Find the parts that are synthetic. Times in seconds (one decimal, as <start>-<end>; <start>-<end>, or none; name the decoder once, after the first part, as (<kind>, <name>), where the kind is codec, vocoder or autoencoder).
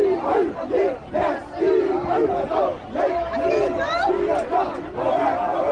none